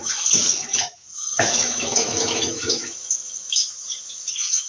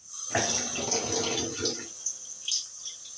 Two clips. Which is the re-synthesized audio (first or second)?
first